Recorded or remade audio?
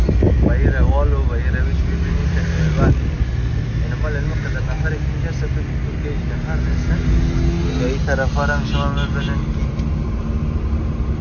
recorded